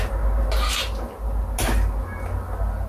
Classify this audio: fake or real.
real